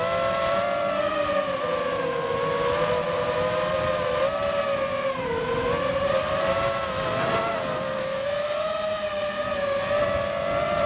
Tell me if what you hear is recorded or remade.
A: recorded